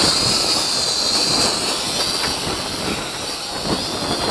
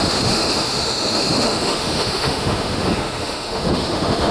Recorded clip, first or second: first